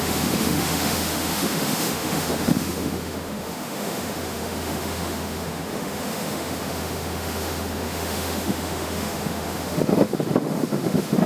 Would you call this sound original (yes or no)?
no